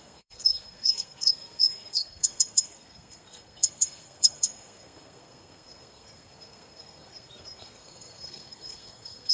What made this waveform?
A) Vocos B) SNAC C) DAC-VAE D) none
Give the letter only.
B